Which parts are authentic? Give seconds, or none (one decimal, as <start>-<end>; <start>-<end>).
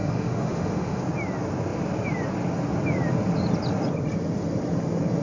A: 1.0-5.2